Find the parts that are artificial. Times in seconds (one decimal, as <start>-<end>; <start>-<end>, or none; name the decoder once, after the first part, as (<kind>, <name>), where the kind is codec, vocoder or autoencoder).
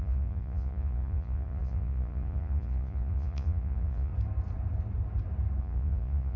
0.0-4.1 (vocoder, Vocos); 5.6-6.4